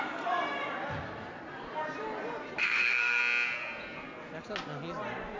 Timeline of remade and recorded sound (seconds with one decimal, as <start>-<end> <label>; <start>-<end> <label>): 0.0-2.6 recorded; 2.6-3.2 remade; 3.2-5.4 recorded